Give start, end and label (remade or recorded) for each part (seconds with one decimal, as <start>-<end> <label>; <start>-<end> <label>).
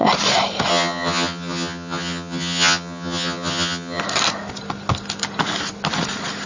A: 0.0-0.7 recorded; 0.7-4.0 remade; 4.0-6.5 recorded